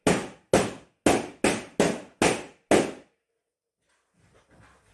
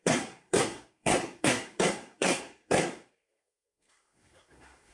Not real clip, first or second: second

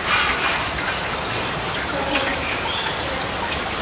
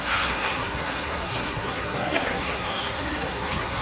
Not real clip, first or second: second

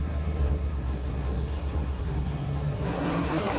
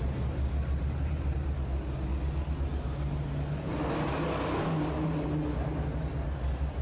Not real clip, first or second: first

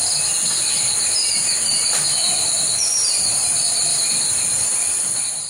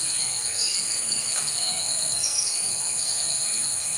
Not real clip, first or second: second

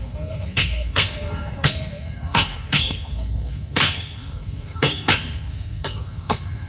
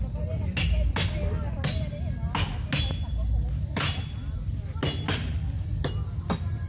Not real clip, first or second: first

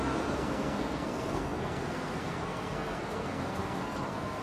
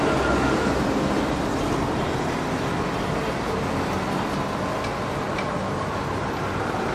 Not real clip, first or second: first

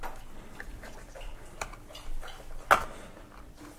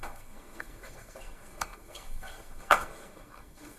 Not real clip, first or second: second